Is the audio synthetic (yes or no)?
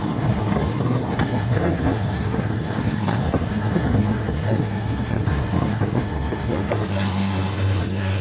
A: yes